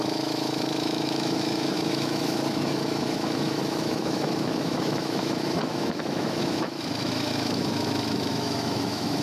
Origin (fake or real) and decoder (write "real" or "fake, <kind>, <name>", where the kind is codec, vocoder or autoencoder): fake, autoencoder, DAC-VAE